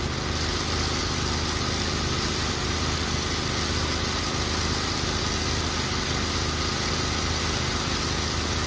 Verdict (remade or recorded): recorded